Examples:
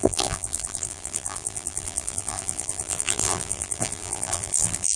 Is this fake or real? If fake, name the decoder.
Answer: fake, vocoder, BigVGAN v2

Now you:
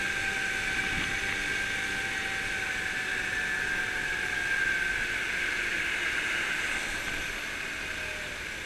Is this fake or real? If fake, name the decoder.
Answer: real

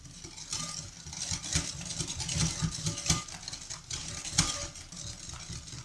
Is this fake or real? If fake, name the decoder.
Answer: real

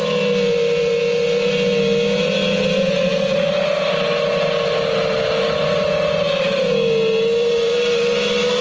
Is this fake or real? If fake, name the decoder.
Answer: real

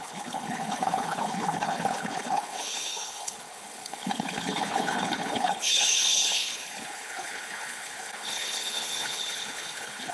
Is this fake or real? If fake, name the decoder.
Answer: fake, codec, HILCodec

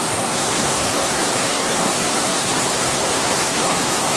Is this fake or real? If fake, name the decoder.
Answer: fake, codec, SNAC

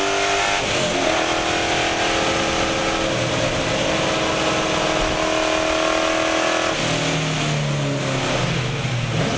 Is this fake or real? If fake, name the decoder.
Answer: real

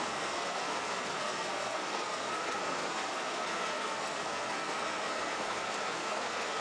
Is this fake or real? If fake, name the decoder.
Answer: fake, codec, SNAC